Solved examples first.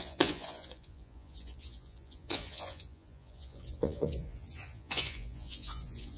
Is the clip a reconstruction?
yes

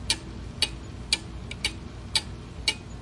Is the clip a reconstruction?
no